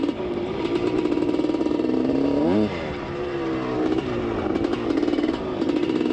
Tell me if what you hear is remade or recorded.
remade